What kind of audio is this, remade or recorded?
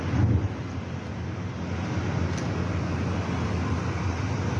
recorded